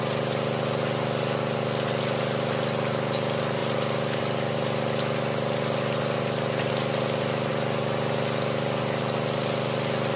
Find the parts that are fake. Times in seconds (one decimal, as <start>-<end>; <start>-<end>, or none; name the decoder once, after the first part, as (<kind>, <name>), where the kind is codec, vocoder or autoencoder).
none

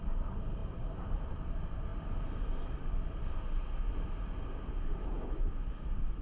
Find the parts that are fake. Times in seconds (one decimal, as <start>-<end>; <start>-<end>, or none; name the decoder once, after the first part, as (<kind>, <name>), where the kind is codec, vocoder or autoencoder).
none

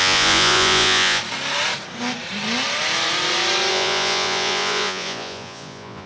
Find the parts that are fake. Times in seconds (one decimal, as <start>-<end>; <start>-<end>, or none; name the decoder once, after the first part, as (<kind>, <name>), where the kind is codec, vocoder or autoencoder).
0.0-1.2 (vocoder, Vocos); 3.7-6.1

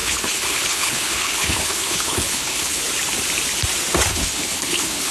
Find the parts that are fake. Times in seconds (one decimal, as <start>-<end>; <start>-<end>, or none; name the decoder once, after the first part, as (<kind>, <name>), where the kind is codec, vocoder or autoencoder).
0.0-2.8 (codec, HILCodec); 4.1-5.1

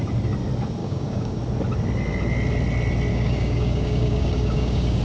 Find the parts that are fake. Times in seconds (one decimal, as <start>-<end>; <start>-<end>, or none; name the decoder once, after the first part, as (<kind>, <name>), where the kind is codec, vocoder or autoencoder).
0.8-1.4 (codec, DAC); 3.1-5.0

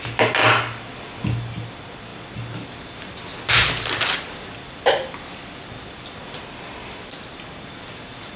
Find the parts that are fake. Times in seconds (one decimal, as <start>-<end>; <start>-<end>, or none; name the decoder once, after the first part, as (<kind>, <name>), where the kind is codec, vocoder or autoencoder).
none